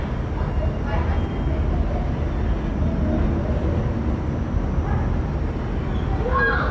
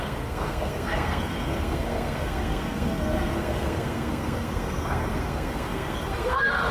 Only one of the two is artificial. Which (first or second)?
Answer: second